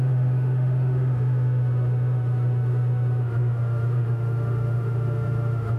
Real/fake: fake